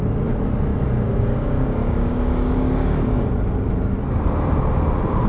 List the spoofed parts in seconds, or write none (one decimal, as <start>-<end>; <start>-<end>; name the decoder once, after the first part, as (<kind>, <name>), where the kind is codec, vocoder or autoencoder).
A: 0.7-3.2 (codec, DAC)